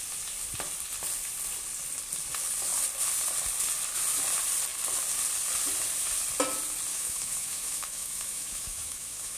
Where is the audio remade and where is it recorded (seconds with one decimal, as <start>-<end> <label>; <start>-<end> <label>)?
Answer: 0.0-6.9 recorded; 6.9-9.4 remade